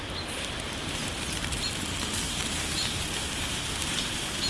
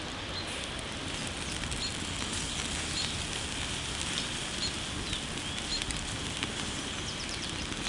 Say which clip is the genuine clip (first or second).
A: second